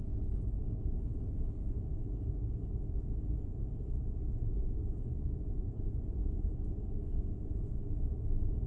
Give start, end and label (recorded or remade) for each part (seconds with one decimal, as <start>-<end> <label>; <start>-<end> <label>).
0.0-4.8 recorded; 4.8-8.2 remade; 8.2-8.7 recorded